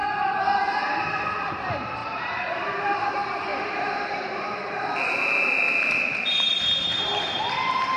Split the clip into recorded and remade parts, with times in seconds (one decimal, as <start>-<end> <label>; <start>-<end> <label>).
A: 0.0-2.0 recorded; 2.0-3.1 remade; 3.1-3.5 recorded; 3.5-6.6 remade; 6.6-8.0 recorded